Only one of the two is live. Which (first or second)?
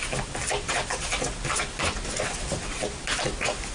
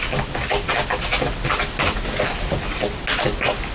second